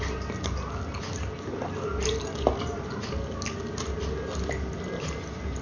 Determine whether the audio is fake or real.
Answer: real